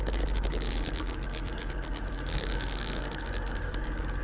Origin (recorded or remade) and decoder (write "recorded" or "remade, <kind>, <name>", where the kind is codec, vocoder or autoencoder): remade, codec, DAC